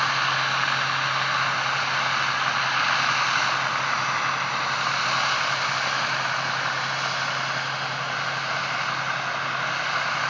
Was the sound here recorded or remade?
recorded